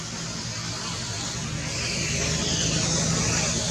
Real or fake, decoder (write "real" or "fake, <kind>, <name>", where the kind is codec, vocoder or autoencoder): real